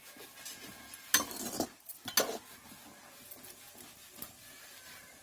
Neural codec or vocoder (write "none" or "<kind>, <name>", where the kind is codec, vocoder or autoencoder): none